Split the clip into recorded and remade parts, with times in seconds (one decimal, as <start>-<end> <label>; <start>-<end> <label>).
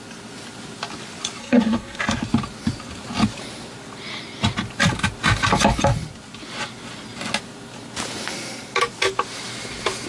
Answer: 0.0-1.4 recorded; 1.4-2.0 remade; 2.0-10.1 recorded